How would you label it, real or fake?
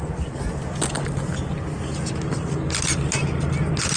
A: real